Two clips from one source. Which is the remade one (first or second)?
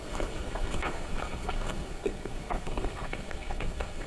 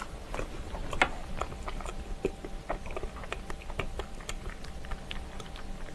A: first